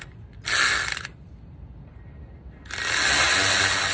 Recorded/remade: recorded